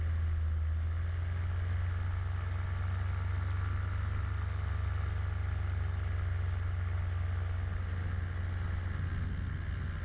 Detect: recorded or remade recorded